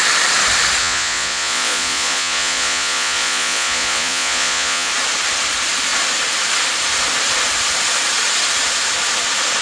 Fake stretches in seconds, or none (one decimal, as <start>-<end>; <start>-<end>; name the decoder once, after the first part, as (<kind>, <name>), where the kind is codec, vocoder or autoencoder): 0.8-4.9 (vocoder, Vocos)